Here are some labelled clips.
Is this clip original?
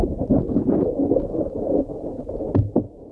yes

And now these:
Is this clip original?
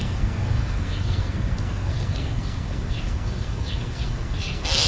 no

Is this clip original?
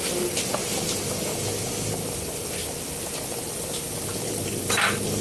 yes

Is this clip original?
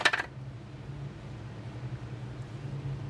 yes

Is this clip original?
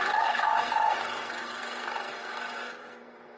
no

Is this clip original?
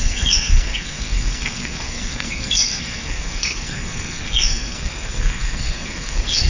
no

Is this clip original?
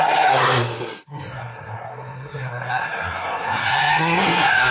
no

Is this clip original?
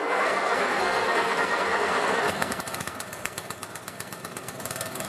no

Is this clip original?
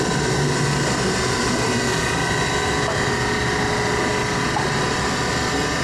yes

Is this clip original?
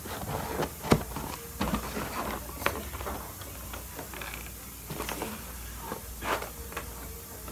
yes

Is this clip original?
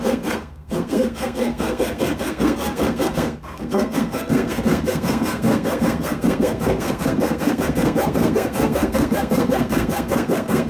no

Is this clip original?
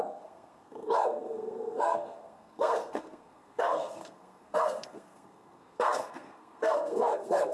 no